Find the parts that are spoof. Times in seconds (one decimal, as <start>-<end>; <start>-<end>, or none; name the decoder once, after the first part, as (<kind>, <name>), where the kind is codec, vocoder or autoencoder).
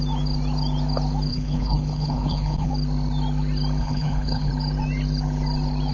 1.3-2.7 (codec, HILCodec); 3.8-4.5